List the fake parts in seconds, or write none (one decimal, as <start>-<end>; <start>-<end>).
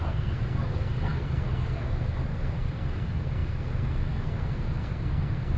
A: 0.0-5.6